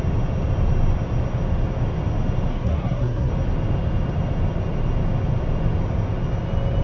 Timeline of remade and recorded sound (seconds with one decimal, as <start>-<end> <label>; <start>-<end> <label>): 0.0-2.5 recorded; 2.5-3.3 remade; 3.3-6.8 recorded